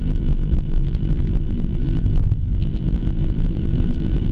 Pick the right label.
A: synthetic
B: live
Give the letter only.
A